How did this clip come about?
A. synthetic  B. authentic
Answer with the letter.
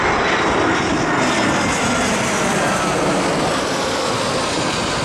B